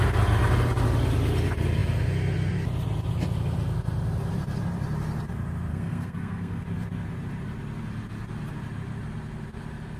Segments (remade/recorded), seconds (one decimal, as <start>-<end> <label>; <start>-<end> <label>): 0.0-5.7 recorded; 5.7-6.6 remade; 6.6-10.0 recorded